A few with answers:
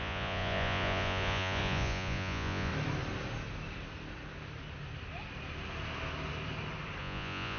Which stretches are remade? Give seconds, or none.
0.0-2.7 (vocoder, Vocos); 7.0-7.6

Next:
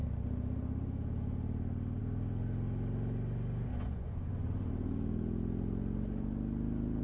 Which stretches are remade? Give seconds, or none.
3.7-4.7 (vocoder, Vocos)

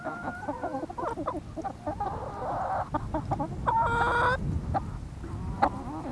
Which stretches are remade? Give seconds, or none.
none

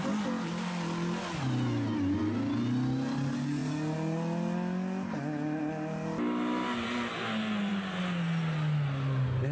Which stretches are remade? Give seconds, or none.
none

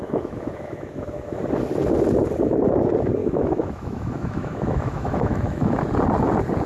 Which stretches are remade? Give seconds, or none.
0.0-1.4 (autoencoder, DAC-VAE); 3.2-5.8